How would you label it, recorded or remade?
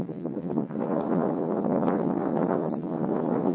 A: remade